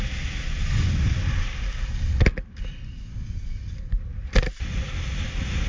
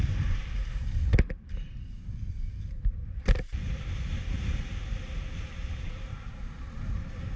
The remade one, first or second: second